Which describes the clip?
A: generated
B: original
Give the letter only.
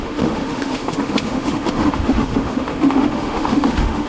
A